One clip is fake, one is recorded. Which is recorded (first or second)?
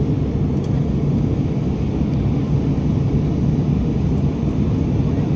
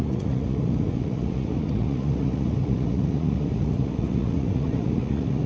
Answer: first